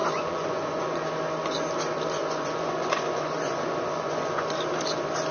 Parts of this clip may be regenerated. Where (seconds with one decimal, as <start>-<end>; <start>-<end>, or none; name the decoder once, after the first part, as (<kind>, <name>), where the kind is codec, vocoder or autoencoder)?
0.0-1.0 (vocoder, Vocos); 2.2-4.5